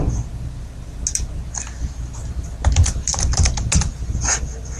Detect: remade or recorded recorded